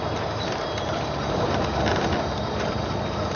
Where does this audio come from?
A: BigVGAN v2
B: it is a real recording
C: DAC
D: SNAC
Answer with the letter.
A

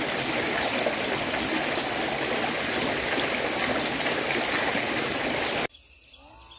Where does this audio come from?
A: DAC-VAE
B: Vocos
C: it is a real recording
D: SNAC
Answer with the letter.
C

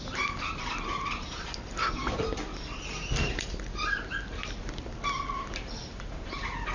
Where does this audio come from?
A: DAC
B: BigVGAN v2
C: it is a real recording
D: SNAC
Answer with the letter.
C